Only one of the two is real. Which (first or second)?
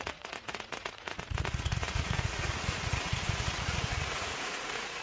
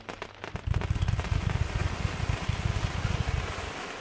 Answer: second